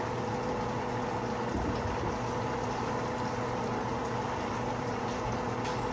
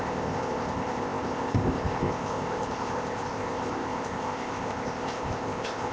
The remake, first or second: second